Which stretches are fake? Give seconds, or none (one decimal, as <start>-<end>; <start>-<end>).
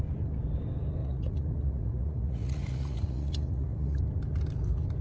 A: 1.0-4.0